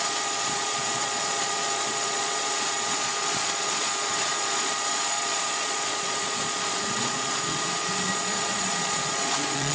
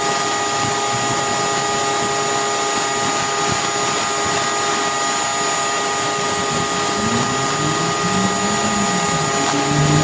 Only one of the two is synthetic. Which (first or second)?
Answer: first